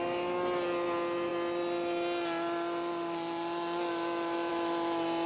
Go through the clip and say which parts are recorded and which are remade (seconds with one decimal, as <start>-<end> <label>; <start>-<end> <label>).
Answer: 0.0-5.3 recorded